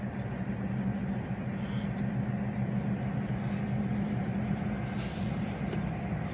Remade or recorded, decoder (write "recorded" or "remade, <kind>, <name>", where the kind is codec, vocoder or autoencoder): recorded